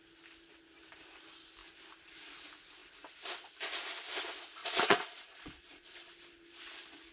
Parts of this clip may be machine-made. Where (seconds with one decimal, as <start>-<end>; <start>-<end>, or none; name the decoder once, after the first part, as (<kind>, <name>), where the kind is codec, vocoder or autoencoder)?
4.6-6.1 (vocoder, Vocos)